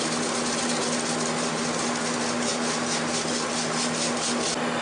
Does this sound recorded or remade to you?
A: recorded